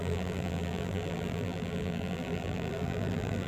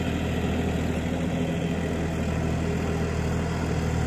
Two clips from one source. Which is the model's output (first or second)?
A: first